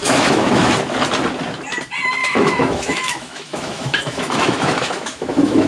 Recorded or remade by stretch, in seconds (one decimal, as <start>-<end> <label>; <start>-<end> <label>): 0.0-0.7 remade; 0.7-2.2 recorded; 2.2-5.7 remade